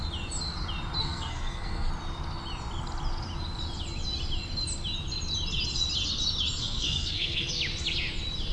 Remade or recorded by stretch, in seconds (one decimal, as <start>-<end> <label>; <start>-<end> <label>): 0.0-1.0 recorded; 1.0-1.9 remade; 1.9-6.6 recorded; 6.6-7.5 remade; 7.5-8.5 recorded